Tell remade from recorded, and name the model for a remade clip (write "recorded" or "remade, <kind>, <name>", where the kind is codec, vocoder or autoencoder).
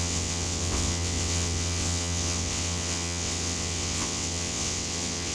remade, vocoder, WaveNeXt